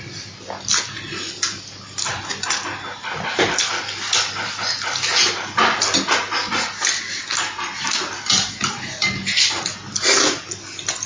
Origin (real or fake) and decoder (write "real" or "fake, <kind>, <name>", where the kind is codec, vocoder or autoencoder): real